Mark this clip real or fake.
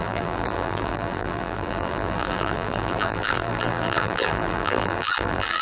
fake